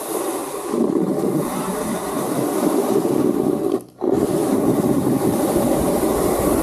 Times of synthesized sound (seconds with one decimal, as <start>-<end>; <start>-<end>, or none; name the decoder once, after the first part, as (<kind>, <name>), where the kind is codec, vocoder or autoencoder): 0.4-1.5 (vocoder, BigVGAN v2); 2.8-6.6